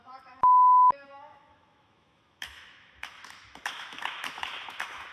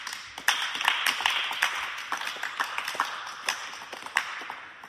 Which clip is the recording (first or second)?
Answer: second